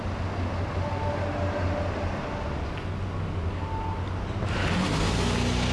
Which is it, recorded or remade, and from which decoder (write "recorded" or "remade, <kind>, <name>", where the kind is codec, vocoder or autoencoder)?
recorded